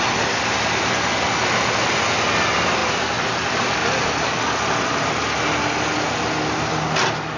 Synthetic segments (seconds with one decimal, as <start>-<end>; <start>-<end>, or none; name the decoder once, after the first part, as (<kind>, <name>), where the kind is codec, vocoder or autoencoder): 2.8-3.4 (vocoder, BigVGAN v2)